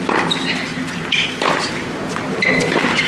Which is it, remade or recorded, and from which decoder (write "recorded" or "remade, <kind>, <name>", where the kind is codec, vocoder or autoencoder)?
recorded